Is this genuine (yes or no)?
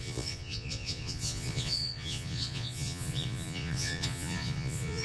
no